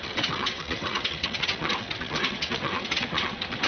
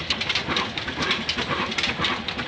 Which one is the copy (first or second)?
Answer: first